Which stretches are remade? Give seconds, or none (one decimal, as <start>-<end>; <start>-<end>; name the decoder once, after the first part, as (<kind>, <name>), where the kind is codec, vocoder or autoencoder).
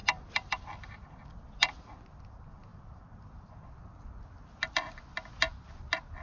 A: none